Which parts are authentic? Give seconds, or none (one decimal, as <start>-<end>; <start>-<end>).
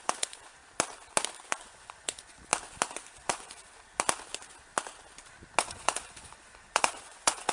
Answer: 0.6-1.6; 2.5-3.2; 3.6-5.6